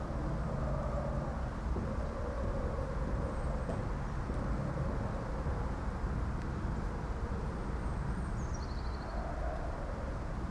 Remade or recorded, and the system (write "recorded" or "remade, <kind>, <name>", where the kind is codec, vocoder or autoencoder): recorded